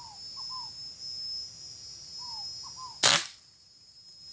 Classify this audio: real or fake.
real